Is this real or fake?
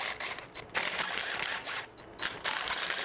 real